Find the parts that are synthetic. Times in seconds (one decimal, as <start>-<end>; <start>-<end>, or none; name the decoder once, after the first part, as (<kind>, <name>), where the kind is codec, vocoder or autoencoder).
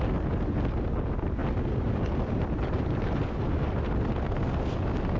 none